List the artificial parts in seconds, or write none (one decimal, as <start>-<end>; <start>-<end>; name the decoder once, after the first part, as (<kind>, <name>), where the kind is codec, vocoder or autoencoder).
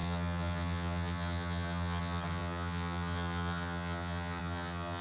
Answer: 0.0-5.0 (vocoder, HiFi-GAN)